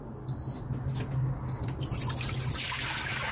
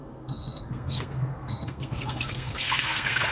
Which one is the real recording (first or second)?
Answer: first